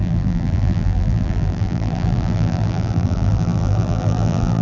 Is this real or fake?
fake